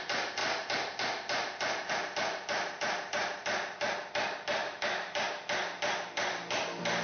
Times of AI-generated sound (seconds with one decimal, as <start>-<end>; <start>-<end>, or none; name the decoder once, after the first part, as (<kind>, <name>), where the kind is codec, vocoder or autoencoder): 4.6-5.2 (autoencoder, DAC-VAE)